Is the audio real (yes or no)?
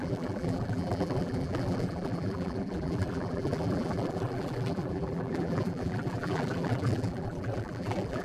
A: no